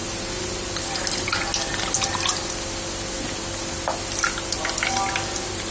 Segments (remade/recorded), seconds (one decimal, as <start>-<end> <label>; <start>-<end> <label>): 0.0-5.7 recorded

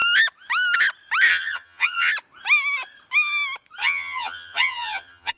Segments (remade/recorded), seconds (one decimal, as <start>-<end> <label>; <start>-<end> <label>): 0.0-1.3 recorded; 1.3-2.1 remade; 2.1-3.8 recorded; 3.8-5.4 remade